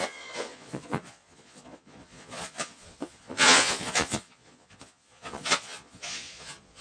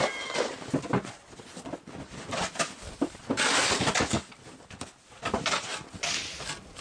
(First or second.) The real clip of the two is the second